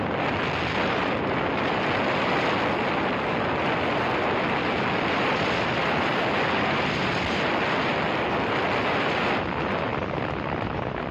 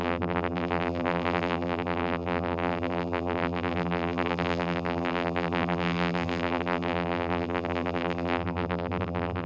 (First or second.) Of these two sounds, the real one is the first